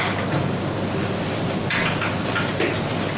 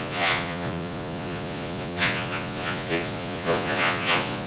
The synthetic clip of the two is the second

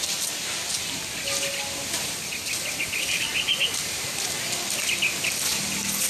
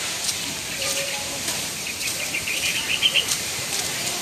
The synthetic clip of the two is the second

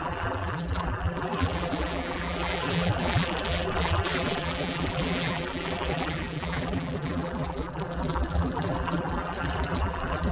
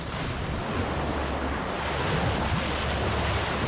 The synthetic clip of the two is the first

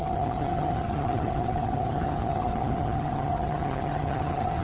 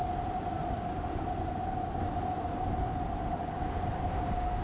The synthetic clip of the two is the first